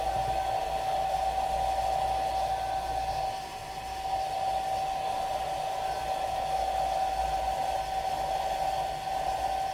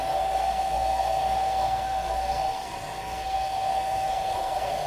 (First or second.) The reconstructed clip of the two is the second